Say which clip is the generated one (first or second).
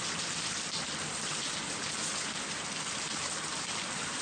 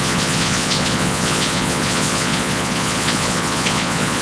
second